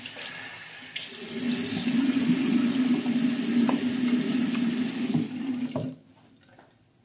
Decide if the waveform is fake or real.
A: real